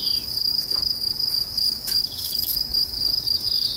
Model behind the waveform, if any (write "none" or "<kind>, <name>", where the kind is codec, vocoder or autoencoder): codec, DAC